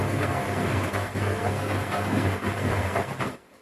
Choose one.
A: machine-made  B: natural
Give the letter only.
A